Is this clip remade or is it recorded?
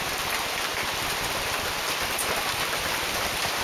remade